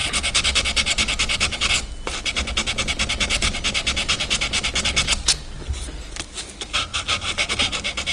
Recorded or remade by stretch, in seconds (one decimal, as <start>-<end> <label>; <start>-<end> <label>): 0.0-8.1 recorded

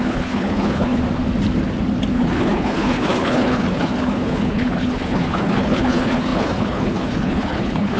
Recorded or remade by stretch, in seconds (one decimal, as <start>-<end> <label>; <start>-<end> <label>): 0.0-1.0 remade; 1.0-2.1 recorded; 2.1-8.0 remade

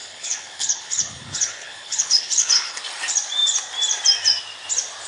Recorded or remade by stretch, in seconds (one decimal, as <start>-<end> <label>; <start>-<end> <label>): 0.0-2.8 remade; 2.8-5.1 recorded

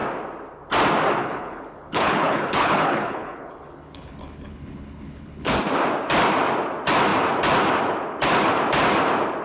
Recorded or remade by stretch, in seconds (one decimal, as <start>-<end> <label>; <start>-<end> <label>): 0.0-1.2 recorded; 1.2-5.5 remade; 5.5-9.4 recorded

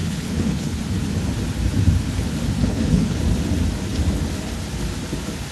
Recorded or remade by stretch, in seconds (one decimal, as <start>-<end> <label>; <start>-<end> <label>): 0.0-0.8 remade; 0.8-2.6 recorded; 2.6-3.2 remade; 3.2-5.5 recorded

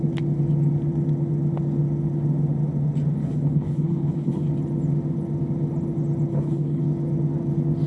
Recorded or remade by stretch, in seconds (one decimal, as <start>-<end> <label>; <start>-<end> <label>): 0.0-3.2 recorded; 3.2-4.5 remade; 4.5-6.3 recorded; 6.3-6.8 remade; 6.8-7.9 recorded